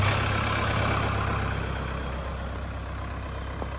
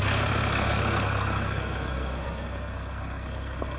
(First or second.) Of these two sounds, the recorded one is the first